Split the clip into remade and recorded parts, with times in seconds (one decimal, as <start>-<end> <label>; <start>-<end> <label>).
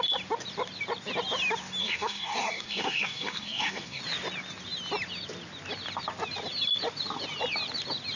0.0-1.8 recorded; 1.8-4.0 remade; 4.0-8.2 recorded